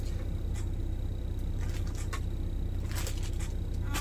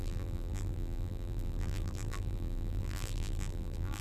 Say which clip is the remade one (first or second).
second